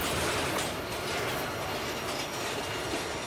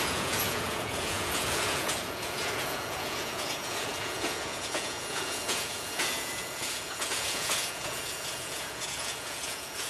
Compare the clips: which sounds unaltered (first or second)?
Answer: first